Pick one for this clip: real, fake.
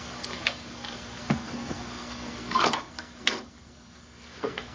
fake